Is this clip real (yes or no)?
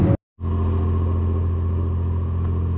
yes